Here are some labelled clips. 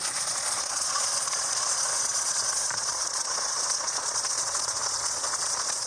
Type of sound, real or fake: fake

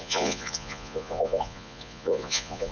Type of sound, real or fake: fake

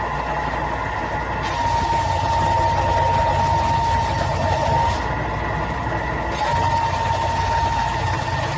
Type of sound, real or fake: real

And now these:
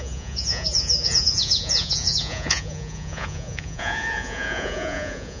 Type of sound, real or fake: fake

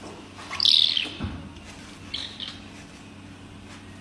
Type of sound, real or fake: real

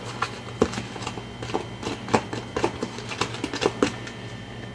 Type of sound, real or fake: real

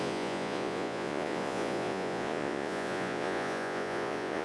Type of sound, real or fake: fake